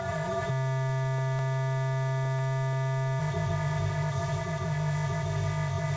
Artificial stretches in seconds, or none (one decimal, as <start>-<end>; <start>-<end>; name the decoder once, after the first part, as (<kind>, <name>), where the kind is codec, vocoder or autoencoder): 0.0-0.5 (codec, ZipCodec); 3.2-6.0